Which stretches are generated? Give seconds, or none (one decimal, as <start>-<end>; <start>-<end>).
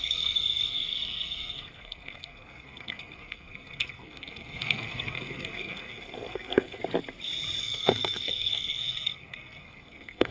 0.0-6.8; 7.6-10.3